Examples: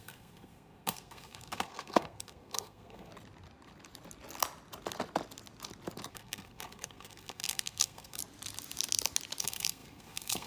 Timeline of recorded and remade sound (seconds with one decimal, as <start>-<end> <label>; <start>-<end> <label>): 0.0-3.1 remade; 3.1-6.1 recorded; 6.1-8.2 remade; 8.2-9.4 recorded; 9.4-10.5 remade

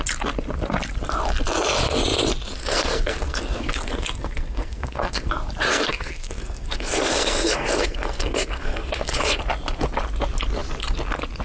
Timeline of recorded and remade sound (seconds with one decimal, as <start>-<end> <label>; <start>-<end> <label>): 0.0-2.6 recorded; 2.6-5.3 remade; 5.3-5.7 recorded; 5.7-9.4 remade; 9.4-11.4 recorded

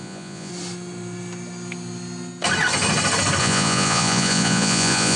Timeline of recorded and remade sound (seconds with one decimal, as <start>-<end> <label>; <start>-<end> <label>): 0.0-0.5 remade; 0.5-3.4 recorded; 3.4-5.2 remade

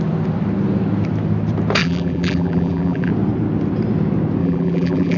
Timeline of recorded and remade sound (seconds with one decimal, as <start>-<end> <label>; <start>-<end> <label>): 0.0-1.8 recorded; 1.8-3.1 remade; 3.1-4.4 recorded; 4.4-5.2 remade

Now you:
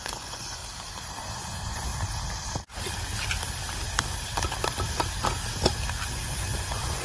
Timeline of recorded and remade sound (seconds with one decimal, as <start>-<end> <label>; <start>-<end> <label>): 0.0-0.6 remade; 0.6-1.2 recorded; 1.2-1.9 remade; 1.9-6.1 recorded; 6.1-7.0 remade

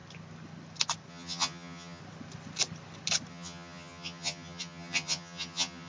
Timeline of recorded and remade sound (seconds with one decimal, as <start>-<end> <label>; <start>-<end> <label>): 0.0-1.1 recorded; 1.1-2.0 remade; 2.0-3.3 recorded; 3.3-5.9 remade

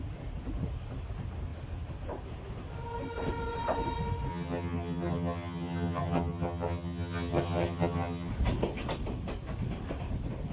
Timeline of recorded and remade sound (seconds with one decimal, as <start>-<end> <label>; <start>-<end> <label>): 0.0-4.3 recorded; 4.3-8.3 remade; 8.3-10.5 recorded